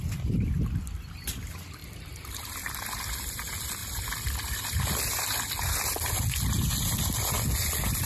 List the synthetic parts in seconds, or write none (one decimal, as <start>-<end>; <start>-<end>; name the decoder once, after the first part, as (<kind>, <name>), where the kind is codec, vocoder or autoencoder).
1.8-2.4 (vocoder, BigVGAN v2); 3.8-6.2